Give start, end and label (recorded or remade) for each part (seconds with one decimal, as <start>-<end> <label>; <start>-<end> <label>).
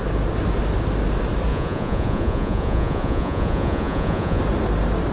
0.0-1.5 recorded; 1.5-4.4 remade; 4.4-5.1 recorded